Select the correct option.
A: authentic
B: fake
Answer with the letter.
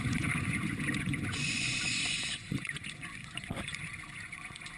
B